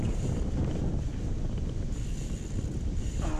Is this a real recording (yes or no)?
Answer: yes